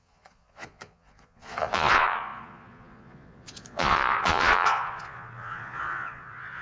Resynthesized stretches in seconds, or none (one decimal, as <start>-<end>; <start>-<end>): 0.0-6.6